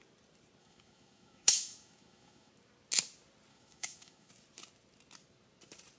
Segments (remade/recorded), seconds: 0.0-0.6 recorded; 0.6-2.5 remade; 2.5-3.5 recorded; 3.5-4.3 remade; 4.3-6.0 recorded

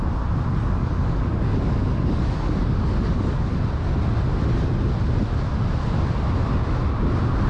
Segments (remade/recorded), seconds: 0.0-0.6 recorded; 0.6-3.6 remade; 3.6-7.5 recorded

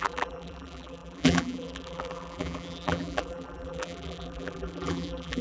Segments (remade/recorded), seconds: 0.0-5.4 remade

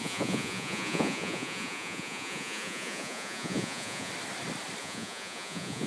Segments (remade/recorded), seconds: 0.0-4.1 remade; 4.1-4.8 recorded; 4.8-5.9 remade

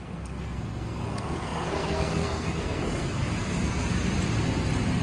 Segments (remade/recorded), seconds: 0.0-3.8 remade; 3.8-5.0 recorded